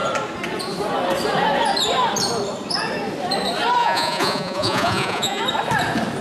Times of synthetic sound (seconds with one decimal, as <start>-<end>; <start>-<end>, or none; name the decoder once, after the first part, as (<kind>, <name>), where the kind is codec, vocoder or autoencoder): 3.8-5.4 (vocoder, Vocos)